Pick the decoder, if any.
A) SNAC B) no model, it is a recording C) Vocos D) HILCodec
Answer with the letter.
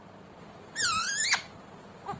B